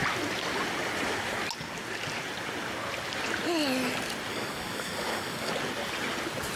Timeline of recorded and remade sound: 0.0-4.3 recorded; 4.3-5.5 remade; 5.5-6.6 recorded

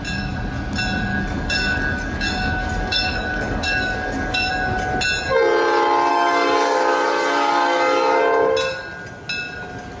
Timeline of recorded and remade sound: 0.0-1.1 recorded; 1.1-4.5 remade; 4.5-6.1 recorded; 6.1-8.2 remade; 8.2-10.0 recorded